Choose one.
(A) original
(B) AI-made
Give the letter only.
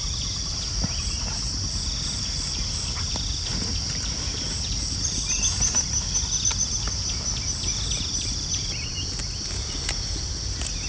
A